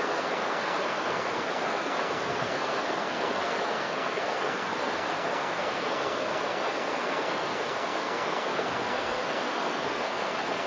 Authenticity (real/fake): fake